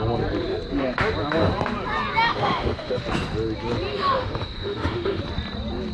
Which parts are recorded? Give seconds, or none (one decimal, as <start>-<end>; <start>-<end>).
0.0-2.3; 3.0-3.9; 5.2-5.9